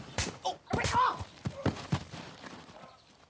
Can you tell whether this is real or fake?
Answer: fake